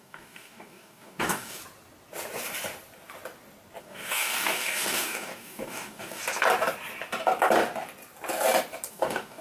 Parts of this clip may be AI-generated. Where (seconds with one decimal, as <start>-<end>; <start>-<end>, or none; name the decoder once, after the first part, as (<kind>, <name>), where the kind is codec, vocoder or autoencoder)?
0.0-1.6 (codec, DAC); 3.8-6.2; 8.9-9.4